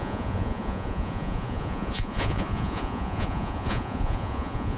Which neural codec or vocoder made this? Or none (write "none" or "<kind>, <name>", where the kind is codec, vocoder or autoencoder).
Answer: vocoder, Vocos